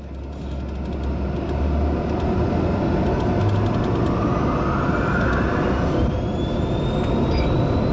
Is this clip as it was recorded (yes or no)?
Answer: yes